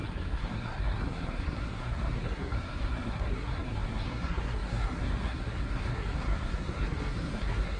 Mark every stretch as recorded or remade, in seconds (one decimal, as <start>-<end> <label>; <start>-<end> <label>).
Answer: 0.0-7.8 remade